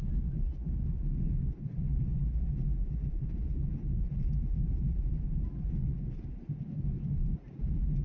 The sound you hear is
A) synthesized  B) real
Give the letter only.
B